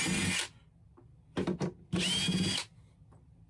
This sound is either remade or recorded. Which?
recorded